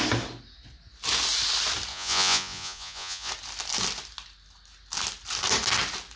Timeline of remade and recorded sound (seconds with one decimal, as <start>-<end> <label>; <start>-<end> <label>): 0.0-1.9 recorded; 1.9-3.3 remade; 3.3-6.2 recorded

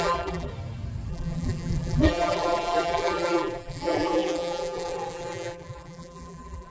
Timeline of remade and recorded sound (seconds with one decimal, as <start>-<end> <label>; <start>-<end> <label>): 0.0-0.5 remade; 0.5-1.1 recorded; 1.1-6.7 remade